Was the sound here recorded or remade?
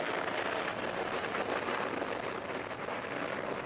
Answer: recorded